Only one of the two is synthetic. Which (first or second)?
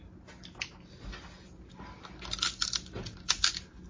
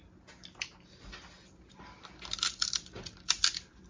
second